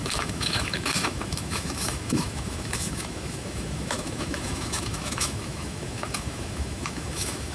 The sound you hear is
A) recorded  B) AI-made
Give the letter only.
B